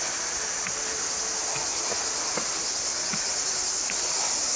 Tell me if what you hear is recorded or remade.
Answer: recorded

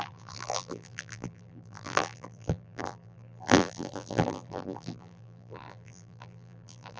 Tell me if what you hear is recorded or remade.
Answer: remade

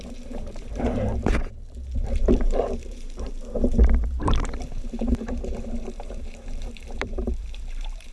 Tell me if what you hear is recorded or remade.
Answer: remade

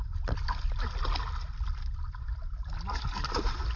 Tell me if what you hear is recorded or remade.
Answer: recorded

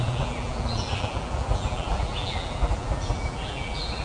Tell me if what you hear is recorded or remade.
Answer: remade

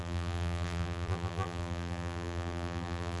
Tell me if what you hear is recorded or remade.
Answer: remade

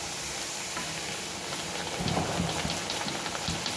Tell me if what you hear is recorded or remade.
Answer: remade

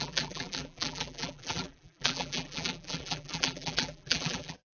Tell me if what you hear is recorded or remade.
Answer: remade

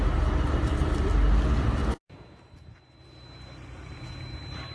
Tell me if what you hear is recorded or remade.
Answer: recorded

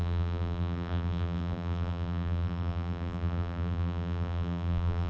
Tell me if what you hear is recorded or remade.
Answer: remade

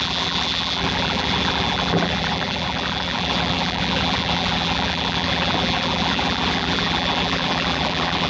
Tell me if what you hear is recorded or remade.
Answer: remade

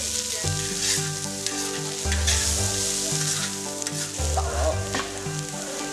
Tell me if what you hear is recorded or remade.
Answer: recorded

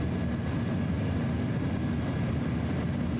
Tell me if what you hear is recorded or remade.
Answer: recorded